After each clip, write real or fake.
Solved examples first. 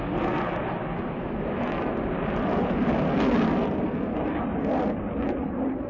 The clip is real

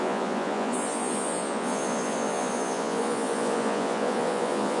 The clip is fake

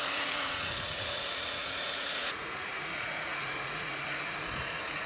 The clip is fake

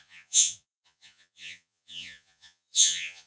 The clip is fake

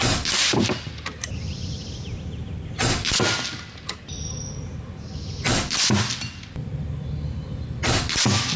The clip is real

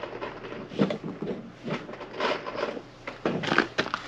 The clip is real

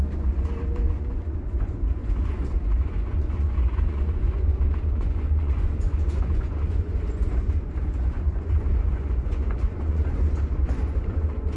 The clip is fake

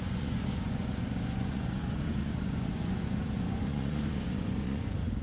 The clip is fake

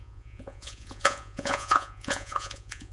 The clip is fake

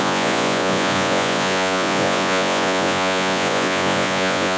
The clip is fake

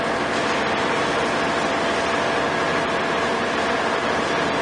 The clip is real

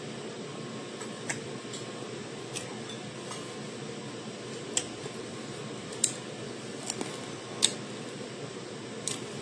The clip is real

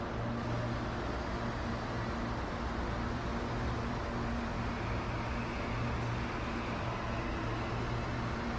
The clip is real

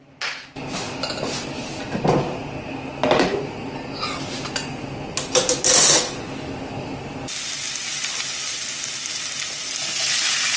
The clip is real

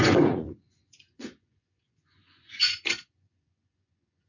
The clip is fake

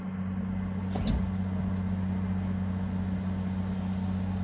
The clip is real